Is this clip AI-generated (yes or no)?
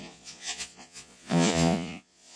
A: yes